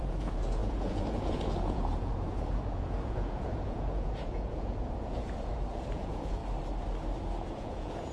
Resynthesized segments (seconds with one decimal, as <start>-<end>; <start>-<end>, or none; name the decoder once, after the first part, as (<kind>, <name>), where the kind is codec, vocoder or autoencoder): 0.0-6.4 (vocoder, Vocos); 7.5-8.1